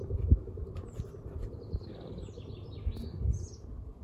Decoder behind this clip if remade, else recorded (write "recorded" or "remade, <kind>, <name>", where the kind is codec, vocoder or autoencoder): recorded